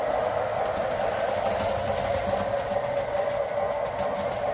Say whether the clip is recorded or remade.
recorded